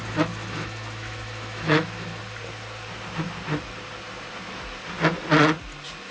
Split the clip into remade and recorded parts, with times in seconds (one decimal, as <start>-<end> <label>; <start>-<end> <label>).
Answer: 0.0-2.2 remade; 2.2-6.1 recorded